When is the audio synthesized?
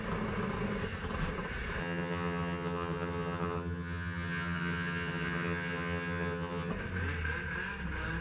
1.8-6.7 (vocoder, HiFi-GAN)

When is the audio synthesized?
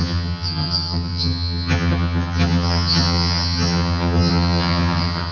0.0-5.3 (vocoder, HiFi-GAN)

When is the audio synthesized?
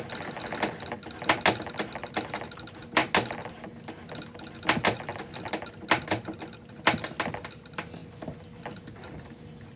none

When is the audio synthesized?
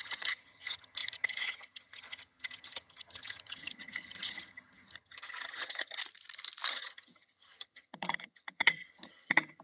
0.0-6.0 (vocoder, HiFi-GAN); 6.7-9.6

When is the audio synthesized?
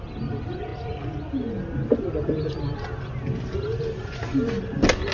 none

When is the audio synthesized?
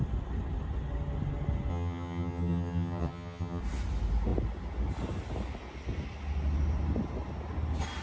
1.7-3.6 (vocoder, HiFi-GAN)